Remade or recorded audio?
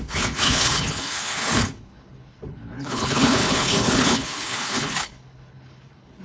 remade